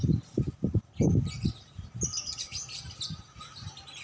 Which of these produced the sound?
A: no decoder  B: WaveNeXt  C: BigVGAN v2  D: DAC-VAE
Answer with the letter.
A